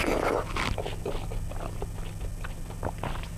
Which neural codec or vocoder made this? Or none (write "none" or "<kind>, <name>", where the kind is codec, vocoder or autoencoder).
none